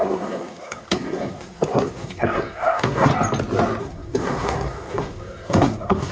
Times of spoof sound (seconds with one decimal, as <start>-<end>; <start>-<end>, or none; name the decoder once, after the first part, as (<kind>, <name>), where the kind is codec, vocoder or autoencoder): 0.0-3.1 (codec, SNAC); 3.8-6.1